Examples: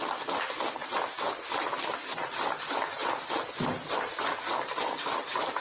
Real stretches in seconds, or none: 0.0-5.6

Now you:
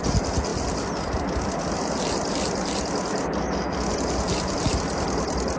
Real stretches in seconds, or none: 0.0-5.6

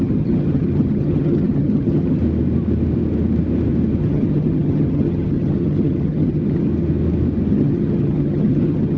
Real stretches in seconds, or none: 2.2-4.0; 6.7-7.5

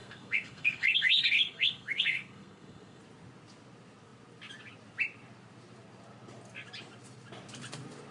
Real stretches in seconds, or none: 3.0-8.1

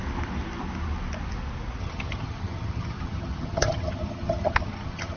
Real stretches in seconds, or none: 0.0-1.8

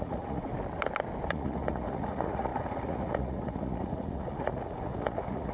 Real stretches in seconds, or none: 0.5-1.3

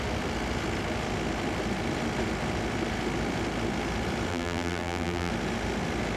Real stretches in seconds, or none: 0.0-4.3; 5.3-6.2

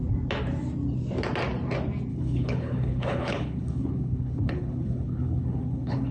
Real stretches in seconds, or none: 0.0-2.1